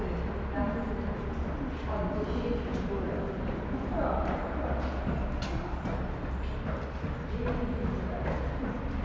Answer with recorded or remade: recorded